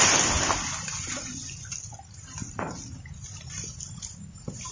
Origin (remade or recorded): recorded